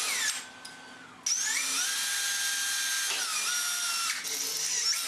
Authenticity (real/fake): real